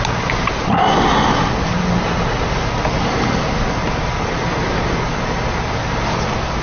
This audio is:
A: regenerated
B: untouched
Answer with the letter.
B